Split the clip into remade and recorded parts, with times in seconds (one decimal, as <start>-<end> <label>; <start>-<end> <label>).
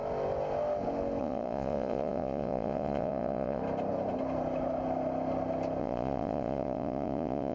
0.0-1.2 recorded; 1.2-3.6 remade; 3.6-5.8 recorded; 5.8-7.5 remade